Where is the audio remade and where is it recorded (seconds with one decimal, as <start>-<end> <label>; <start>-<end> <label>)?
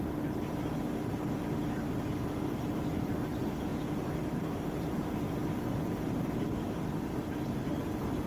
0.0-8.3 recorded